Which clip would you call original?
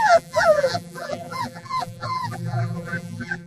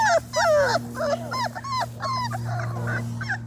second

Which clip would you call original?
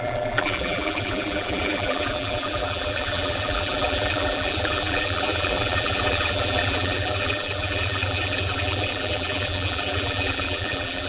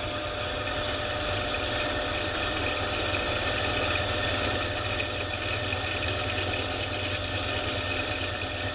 second